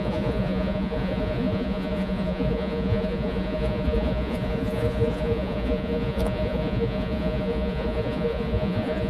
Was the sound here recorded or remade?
remade